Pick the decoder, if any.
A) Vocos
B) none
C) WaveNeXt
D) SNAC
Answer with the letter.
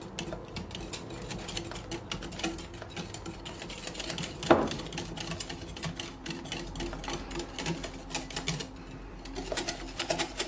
B